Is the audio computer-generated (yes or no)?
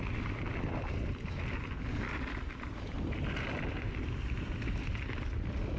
no